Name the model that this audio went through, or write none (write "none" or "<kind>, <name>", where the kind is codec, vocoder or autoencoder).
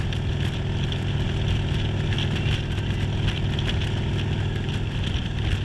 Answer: none